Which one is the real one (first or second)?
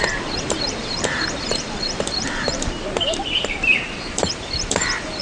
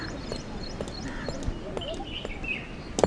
second